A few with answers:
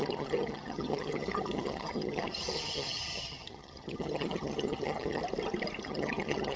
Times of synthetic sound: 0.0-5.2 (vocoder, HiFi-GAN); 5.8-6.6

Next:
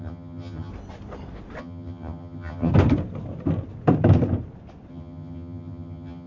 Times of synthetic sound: 0.0-0.7 (vocoder, HiFi-GAN); 1.6-2.7; 4.9-6.3

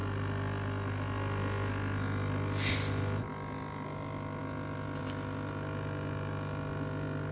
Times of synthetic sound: none

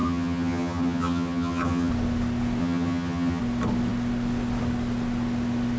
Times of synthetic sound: 0.0-1.9 (vocoder, HiFi-GAN); 2.6-3.4

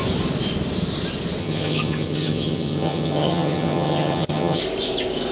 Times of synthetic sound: 1.4-4.6 (vocoder, HiFi-GAN)

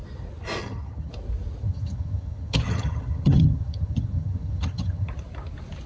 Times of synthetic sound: 0.6-1.1 (vocoder, HiFi-GAN); 1.6-5.1

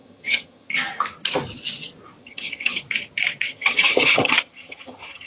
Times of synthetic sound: 0.0-0.7 (vocoder, HiFi-GAN); 2.2-2.8; 3.5-5.3

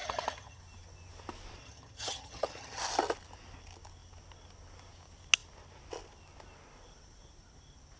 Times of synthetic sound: 0.0-0.6 (vocoder, HiFi-GAN); 1.6-2.8